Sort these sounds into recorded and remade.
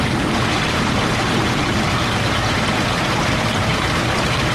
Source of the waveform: remade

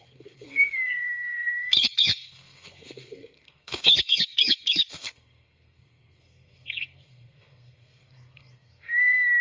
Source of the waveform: remade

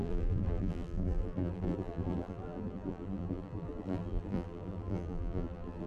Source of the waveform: remade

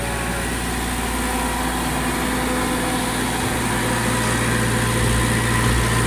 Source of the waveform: recorded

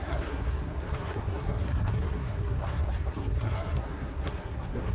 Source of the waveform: remade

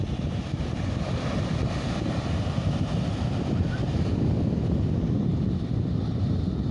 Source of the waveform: recorded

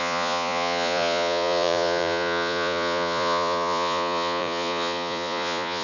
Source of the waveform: remade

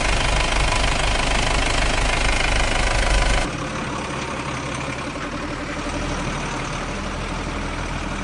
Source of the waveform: recorded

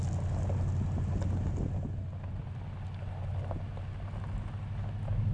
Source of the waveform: recorded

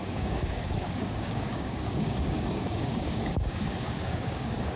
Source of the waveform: remade